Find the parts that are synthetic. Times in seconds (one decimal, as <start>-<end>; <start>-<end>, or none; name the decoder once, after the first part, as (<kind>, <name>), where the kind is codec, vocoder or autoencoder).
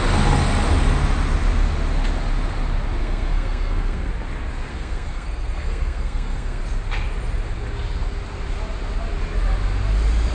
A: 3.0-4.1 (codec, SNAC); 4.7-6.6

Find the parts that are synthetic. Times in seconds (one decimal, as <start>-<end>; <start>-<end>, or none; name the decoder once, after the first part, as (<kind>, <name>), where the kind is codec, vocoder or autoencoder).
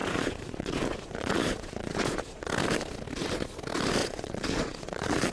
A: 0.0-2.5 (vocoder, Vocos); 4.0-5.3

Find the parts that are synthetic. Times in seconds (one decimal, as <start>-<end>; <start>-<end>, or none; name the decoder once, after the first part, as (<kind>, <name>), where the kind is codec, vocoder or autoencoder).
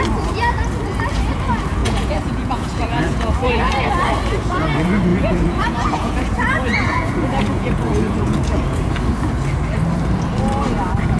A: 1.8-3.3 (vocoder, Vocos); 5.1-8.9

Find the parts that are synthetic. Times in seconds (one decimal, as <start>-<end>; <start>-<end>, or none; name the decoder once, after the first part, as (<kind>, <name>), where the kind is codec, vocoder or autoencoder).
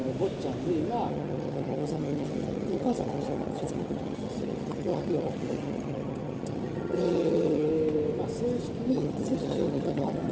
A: 1.1-7.7 (vocoder, HiFi-GAN); 8.9-10.3